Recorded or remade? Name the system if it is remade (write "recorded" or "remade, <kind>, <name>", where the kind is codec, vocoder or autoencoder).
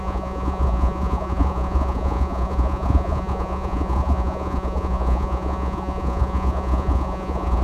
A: remade, vocoder, Vocos